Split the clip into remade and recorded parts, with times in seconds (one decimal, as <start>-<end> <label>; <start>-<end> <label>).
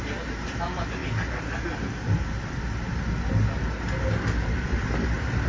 0.0-5.5 recorded